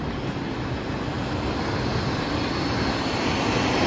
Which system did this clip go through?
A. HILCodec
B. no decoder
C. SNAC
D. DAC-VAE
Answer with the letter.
B